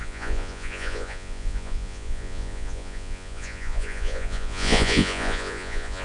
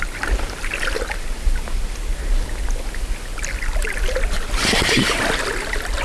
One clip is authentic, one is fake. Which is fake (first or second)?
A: first